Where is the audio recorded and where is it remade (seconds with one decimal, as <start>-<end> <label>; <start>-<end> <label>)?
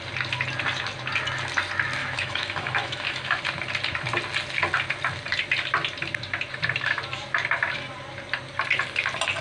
0.0-2.0 recorded; 2.0-3.4 remade; 3.4-9.4 recorded